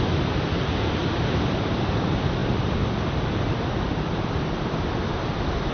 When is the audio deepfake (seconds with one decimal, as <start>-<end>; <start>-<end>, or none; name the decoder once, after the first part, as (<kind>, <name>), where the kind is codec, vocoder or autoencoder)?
1.0-2.0 (vocoder, BigVGAN v2); 2.4-3.0